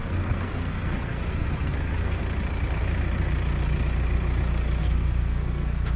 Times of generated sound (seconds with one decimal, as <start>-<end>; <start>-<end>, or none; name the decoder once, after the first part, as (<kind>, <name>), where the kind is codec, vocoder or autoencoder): 0.0-2.2 (codec, SNAC); 4.8-6.0